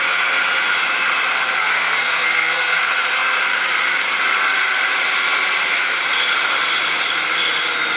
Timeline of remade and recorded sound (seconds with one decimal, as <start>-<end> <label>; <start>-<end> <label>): 0.0-1.6 recorded; 1.6-2.8 remade; 2.8-8.0 recorded